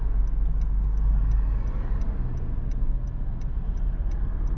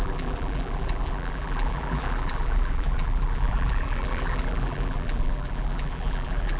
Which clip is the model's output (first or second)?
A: second